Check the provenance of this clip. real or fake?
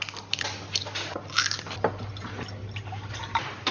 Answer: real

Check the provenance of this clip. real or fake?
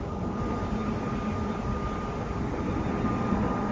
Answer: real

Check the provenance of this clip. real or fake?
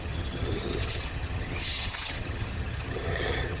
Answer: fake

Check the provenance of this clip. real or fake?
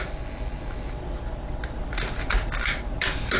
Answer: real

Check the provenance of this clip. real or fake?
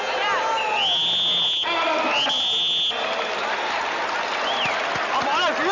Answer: real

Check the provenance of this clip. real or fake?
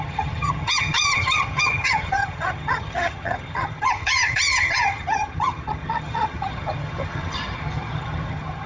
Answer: fake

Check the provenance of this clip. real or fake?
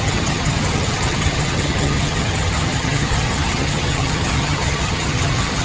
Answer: fake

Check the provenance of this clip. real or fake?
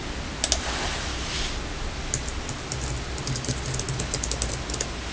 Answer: real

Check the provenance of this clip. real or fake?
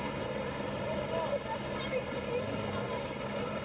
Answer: real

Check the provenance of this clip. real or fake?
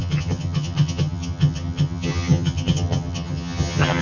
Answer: fake